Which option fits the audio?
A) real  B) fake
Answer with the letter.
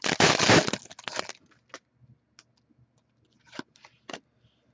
A